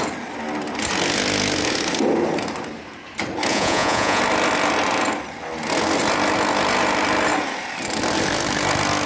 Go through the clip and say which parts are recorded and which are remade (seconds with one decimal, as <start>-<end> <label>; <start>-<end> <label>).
0.0-3.5 recorded; 3.5-4.2 remade; 4.2-9.1 recorded